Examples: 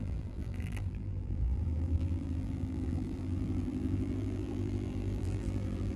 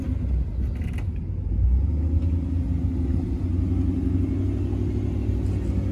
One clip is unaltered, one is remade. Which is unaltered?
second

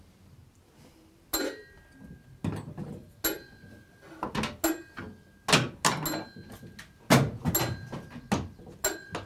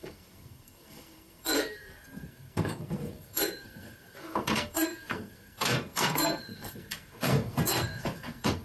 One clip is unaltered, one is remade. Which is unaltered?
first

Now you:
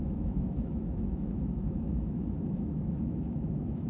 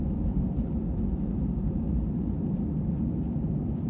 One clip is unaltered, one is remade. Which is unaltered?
second